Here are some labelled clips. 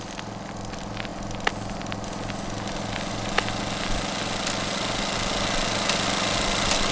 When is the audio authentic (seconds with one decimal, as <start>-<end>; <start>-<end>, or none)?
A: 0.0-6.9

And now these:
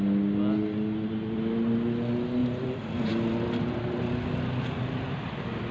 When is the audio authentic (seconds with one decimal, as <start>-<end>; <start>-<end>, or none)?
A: 0.0-2.4; 4.1-5.7

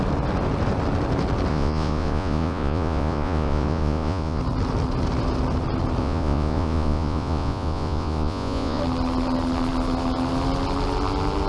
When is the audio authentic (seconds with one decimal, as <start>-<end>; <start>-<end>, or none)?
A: 0.0-1.5; 4.4-6.0; 8.8-11.5